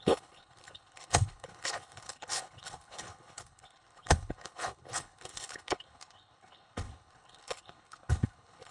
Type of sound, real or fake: fake